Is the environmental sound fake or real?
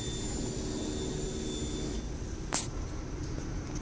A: real